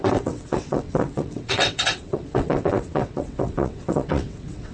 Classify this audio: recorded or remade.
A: remade